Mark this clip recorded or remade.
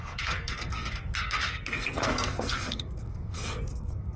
remade